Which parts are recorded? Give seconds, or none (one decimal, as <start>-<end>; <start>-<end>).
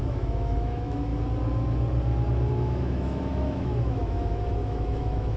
1.1-2.5